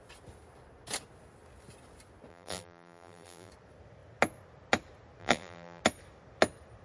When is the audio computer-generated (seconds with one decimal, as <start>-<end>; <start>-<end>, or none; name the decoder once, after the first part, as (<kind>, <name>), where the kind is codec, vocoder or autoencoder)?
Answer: 2.3-3.5 (vocoder, BigVGAN v2); 5.2-5.8